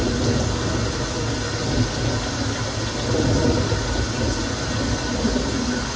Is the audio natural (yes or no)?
yes